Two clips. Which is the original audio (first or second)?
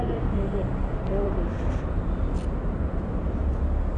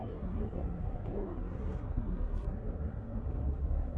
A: first